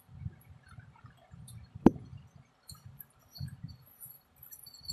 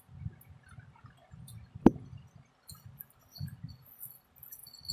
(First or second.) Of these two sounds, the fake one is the first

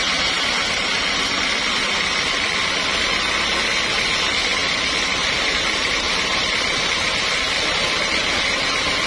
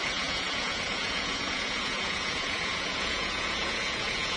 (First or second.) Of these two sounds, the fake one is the second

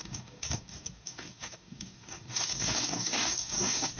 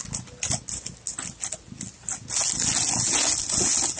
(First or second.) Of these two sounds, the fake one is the first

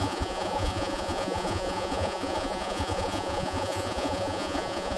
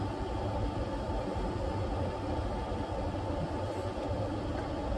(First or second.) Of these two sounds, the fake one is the first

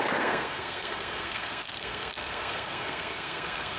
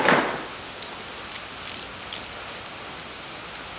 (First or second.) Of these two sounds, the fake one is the first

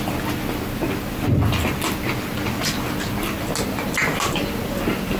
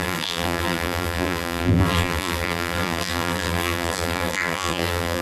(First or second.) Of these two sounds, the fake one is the second